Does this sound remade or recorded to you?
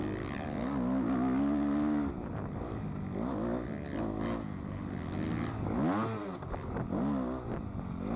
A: recorded